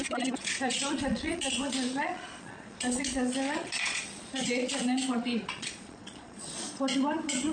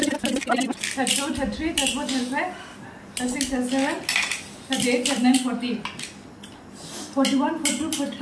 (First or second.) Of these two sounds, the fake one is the first